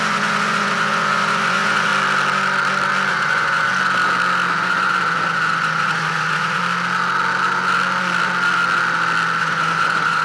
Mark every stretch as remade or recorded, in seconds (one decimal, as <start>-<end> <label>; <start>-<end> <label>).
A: 0.0-1.9 remade; 1.9-3.1 recorded; 3.1-3.7 remade; 3.7-4.5 recorded; 4.5-6.6 remade; 6.6-9.4 recorded; 9.4-10.2 remade